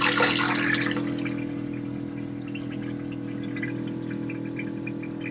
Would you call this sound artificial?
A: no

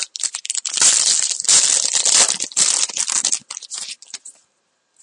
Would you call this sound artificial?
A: no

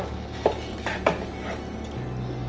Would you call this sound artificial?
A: no